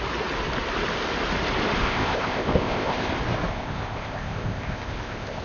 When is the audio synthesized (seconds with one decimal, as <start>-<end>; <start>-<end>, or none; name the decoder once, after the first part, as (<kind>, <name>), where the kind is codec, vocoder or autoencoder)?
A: 1.8-3.1 (codec, ZipCodec); 3.5-5.4